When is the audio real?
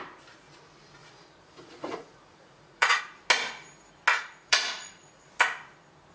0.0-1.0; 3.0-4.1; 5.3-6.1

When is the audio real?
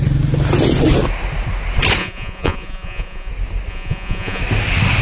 0.0-2.0; 3.3-3.7; 4.4-5.0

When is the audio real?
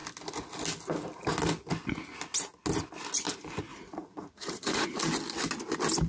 0.0-3.7; 5.0-6.1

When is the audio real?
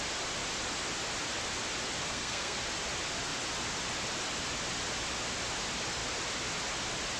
0.0-2.1; 2.6-7.2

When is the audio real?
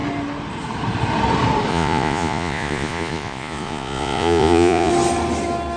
0.0-1.7; 4.9-5.8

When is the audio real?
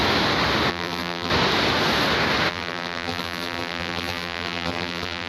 0.0-0.7; 1.3-2.5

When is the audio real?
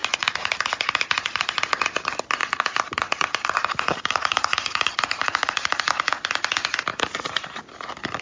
1.5-2.4; 5.9-6.9; 7.6-8.2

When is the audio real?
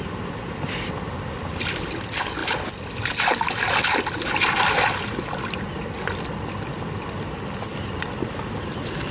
none